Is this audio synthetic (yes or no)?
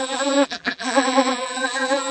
yes